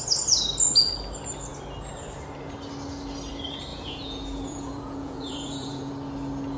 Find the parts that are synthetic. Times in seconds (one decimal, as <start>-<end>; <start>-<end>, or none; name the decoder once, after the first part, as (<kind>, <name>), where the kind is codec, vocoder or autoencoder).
3.7-5.9 (vocoder, Vocos)